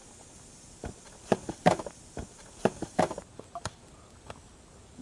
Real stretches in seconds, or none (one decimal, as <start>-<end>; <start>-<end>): 3.0-5.0